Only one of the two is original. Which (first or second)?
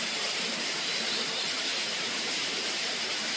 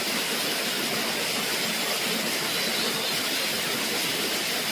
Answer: second